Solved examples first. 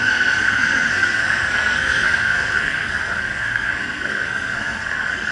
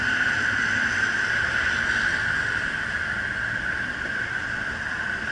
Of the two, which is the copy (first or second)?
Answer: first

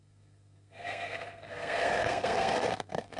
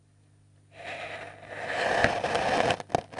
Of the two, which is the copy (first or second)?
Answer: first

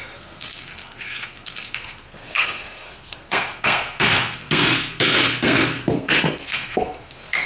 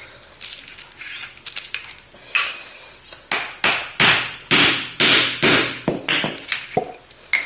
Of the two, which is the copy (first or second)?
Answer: first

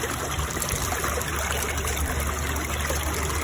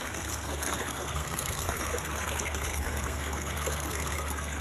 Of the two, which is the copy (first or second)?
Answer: second